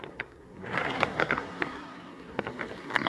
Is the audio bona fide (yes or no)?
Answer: no